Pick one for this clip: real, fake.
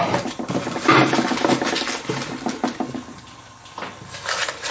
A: real